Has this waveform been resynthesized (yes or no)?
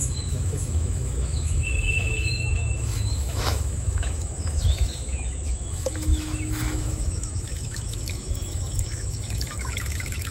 yes